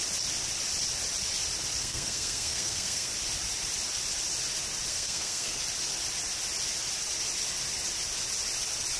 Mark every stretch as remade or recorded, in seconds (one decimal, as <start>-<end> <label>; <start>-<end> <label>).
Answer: 0.0-1.8 recorded; 1.8-3.1 remade; 3.1-4.9 recorded; 4.9-5.6 remade; 5.6-9.0 recorded